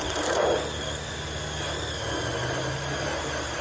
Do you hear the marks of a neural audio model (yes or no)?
no